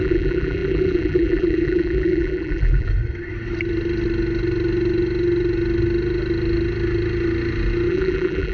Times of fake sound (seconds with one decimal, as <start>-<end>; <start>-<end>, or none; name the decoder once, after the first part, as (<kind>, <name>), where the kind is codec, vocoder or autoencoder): 0.0-2.9 (vocoder, BigVGAN v2); 7.9-8.5